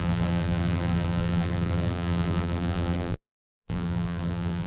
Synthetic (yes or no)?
yes